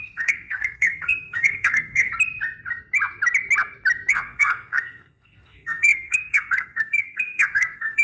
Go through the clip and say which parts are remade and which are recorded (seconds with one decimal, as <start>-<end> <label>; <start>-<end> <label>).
0.0-2.1 remade; 2.1-4.1 recorded; 4.1-8.0 remade